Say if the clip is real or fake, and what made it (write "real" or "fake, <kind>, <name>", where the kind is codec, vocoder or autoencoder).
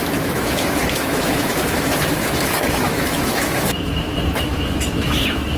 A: fake, autoencoder, DAC-VAE